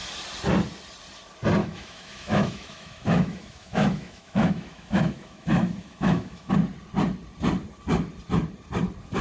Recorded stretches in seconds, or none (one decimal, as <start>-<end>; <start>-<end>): 0.0-1.6; 6.5-9.2